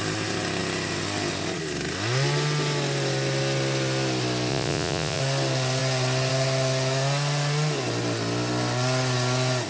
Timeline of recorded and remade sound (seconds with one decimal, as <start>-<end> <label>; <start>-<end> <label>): 0.0-4.5 recorded; 4.5-5.2 remade; 5.2-9.7 recorded

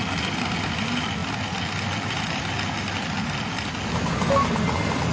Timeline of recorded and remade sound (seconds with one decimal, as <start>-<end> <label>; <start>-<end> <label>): 0.0-5.1 recorded

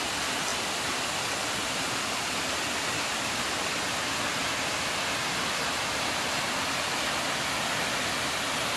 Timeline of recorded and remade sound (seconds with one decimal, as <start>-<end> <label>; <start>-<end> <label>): 0.0-8.8 recorded

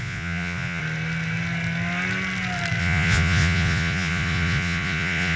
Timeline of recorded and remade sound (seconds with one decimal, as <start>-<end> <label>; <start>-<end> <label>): 0.0-0.8 remade; 0.8-2.8 recorded; 2.8-5.4 remade

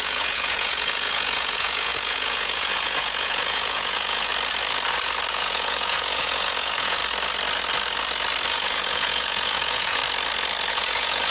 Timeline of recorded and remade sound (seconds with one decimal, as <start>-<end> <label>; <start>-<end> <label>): 0.0-4.3 remade; 4.3-5.3 recorded; 5.3-7.0 remade; 7.0-8.5 recorded; 8.5-10.0 remade; 10.0-10.7 recorded; 10.7-11.3 remade

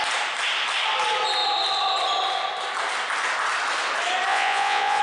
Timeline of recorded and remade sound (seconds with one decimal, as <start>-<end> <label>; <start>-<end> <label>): 0.0-4.3 recorded; 4.3-5.0 remade